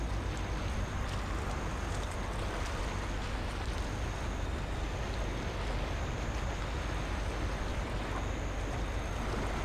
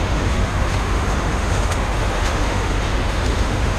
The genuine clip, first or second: first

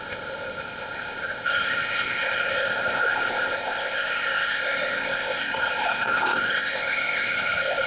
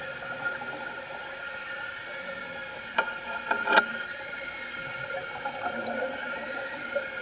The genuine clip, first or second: second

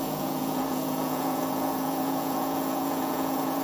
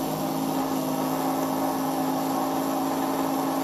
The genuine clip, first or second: second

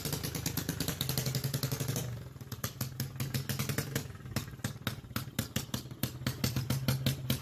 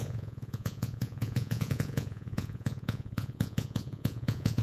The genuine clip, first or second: first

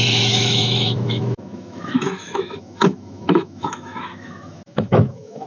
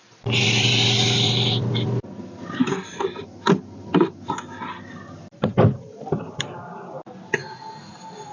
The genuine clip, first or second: second